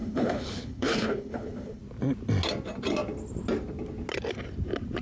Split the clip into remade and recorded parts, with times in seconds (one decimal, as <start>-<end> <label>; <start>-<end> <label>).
0.0-1.8 remade; 1.8-5.0 recorded